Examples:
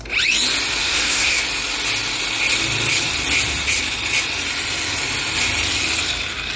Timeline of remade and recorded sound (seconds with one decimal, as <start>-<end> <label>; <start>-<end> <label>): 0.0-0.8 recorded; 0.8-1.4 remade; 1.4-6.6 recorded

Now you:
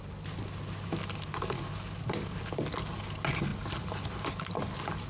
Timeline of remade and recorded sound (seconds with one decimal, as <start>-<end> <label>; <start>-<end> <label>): 0.0-5.1 recorded

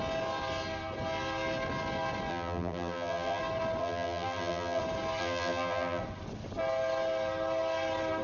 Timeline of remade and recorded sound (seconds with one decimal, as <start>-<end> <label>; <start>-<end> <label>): 0.0-2.3 recorded; 2.3-3.4 remade; 3.4-3.8 recorded; 3.8-4.8 remade; 4.8-5.2 recorded; 5.2-6.0 remade; 6.0-8.2 recorded

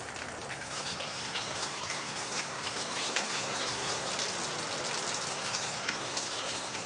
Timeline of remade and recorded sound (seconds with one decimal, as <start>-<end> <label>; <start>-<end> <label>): 0.0-0.5 recorded; 0.5-4.1 remade; 4.1-5.3 recorded; 5.3-6.9 remade

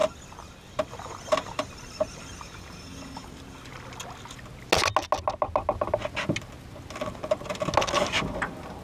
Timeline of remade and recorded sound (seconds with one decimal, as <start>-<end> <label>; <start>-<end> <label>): 0.0-8.8 recorded

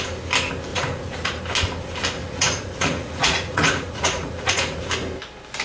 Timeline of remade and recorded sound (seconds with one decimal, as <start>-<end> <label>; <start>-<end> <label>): 0.0-0.7 recorded; 0.7-1.4 remade; 1.4-2.2 recorded; 2.2-4.8 remade; 4.8-5.6 recorded

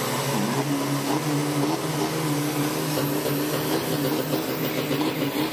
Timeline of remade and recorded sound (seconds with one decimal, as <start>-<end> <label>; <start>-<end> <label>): 0.0-5.5 recorded

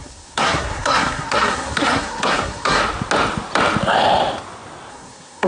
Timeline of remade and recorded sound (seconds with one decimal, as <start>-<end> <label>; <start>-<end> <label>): 0.0-2.8 remade; 2.8-4.9 recorded; 4.9-5.5 remade